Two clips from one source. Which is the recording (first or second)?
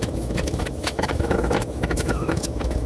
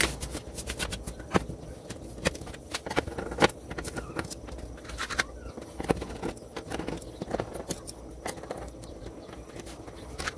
second